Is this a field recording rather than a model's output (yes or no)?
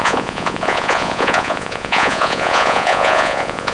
no